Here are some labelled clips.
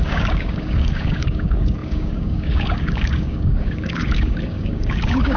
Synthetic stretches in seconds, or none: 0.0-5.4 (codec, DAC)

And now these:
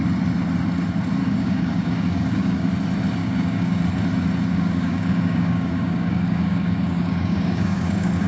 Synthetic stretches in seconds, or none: 1.2-2.7 (codec, DAC); 3.2-3.8; 4.5-8.3

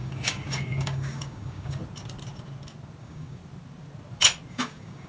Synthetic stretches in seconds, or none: 0.0-1.8 (codec, DAC); 3.0-3.4; 4.5-5.1

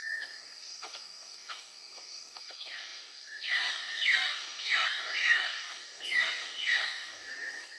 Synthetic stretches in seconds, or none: 0.0-7.8 (codec, DAC)

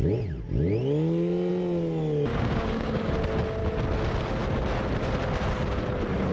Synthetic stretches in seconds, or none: 2.3-3.1 (codec, DAC)

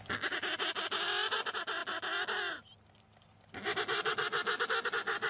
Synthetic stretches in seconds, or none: none

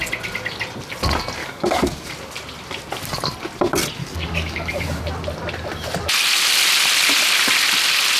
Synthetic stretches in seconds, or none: 1.4-2.1 (codec, DAC); 4.0-5.0

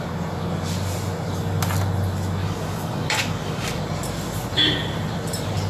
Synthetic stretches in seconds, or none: 2.4-3.8 (codec, DAC)